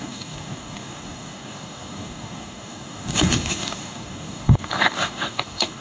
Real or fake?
fake